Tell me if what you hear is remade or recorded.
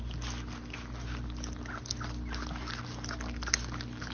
recorded